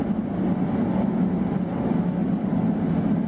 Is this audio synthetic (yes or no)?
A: no